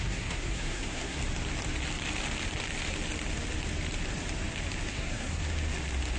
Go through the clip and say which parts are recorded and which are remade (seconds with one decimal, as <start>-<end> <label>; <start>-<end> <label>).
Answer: 0.0-1.2 remade; 1.2-4.9 recorded; 4.9-5.4 remade; 5.4-6.2 recorded